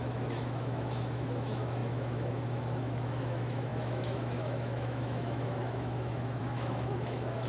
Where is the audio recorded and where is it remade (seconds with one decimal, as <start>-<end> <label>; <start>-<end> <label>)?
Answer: 0.0-7.5 remade